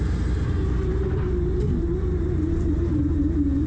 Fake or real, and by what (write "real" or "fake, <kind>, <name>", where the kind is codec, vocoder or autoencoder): real